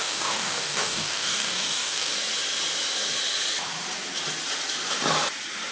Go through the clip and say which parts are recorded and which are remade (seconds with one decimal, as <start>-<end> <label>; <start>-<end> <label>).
0.0-2.1 remade; 2.1-5.7 recorded